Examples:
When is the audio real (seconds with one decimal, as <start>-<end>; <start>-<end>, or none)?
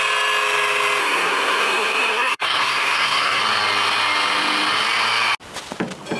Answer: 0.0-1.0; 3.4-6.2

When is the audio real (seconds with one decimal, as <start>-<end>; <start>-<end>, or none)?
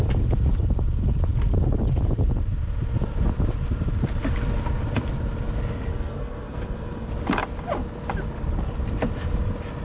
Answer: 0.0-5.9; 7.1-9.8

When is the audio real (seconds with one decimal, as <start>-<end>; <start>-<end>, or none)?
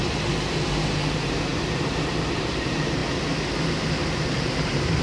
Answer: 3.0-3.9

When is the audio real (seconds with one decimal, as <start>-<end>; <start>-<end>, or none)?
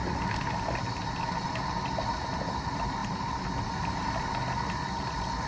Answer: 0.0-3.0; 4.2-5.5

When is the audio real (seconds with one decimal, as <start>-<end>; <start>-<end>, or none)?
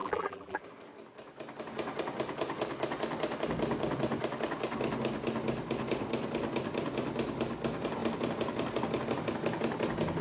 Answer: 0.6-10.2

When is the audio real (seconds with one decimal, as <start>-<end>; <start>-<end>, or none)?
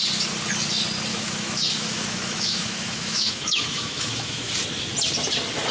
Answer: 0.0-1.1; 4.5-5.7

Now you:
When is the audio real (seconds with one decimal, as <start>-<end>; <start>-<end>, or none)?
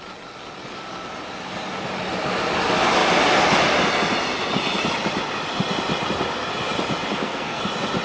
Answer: 0.0-7.1; 7.6-8.0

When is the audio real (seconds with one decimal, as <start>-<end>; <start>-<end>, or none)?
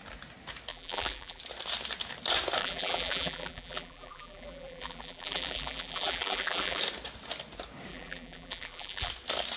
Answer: 0.0-0.7; 1.4-2.6; 6.8-7.9; 9.1-9.6